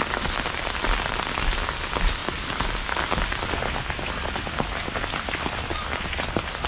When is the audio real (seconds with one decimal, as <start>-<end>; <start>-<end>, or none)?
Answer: 0.0-6.7